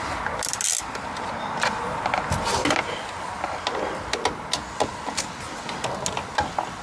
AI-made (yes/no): no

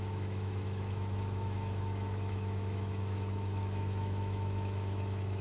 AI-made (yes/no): yes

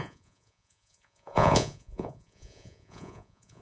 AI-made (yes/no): yes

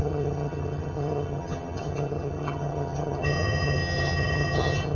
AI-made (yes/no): yes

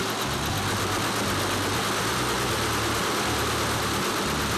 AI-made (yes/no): no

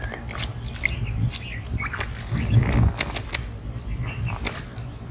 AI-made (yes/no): no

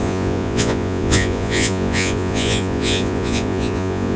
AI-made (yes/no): yes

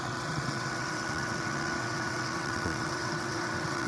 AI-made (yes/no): yes